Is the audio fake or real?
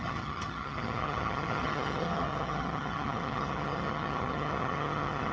fake